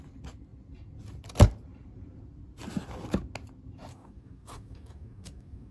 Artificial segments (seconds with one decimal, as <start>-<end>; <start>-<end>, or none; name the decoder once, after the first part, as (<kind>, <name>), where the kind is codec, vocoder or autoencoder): 3.9-5.7 (codec, DAC)